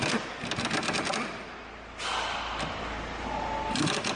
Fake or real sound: real